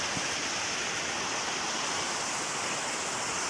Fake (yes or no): no